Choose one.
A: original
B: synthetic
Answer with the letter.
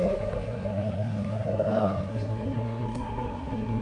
B